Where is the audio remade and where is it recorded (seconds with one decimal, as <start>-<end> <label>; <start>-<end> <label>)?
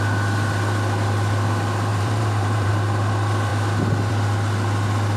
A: 0.0-1.9 recorded; 1.9-2.7 remade; 2.7-5.2 recorded